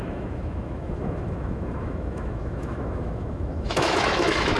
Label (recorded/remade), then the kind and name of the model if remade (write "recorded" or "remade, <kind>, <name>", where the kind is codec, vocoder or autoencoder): remade, autoencoder, DAC-VAE